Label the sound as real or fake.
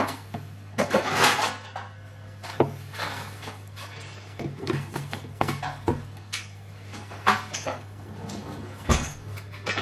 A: fake